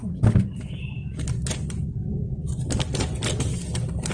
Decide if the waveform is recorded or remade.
recorded